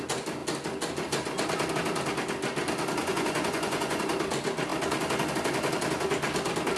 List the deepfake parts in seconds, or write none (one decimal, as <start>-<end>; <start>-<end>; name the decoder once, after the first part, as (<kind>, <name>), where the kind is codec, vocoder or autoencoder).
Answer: 3.0-4.0 (vocoder, Vocos)